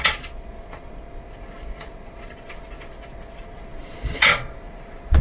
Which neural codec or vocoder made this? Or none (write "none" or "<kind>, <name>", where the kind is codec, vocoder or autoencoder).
vocoder, Vocos